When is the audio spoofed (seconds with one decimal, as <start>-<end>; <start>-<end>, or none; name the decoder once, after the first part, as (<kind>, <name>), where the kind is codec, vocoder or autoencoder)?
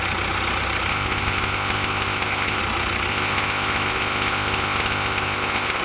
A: 0.9-2.6 (codec, ZipCodec); 3.1-5.8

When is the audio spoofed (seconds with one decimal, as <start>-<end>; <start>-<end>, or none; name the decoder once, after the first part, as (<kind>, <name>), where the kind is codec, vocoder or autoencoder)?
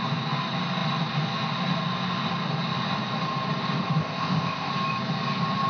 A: 4.0-4.7 (codec, ZipCodec)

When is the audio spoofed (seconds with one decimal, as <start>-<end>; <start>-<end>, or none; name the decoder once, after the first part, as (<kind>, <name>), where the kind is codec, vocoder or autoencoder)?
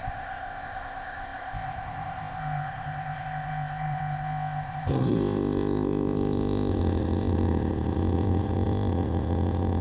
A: 0.0-9.8 (codec, ZipCodec)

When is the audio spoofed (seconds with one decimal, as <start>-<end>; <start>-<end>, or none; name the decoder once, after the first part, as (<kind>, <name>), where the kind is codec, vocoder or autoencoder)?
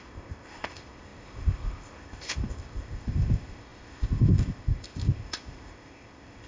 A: 0.0-6.5 (codec, ZipCodec)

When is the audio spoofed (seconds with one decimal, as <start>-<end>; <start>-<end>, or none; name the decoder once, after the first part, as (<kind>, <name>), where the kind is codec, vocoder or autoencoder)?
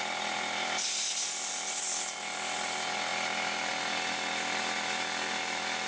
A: none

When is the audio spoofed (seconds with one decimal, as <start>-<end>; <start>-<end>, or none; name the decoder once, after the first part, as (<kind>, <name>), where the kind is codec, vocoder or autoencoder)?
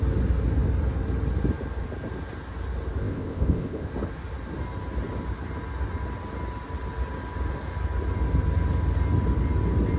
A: 3.0-3.9 (codec, ZipCodec)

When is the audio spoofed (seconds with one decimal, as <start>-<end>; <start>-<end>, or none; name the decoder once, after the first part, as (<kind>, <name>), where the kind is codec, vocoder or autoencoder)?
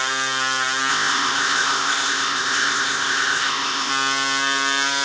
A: 0.9-3.9 (codec, ZipCodec)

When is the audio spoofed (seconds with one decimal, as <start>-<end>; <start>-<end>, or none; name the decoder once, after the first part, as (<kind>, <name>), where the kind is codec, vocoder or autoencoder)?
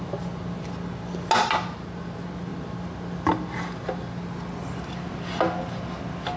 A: none